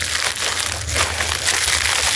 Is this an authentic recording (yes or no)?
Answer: yes